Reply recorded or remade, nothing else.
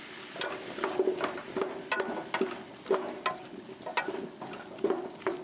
recorded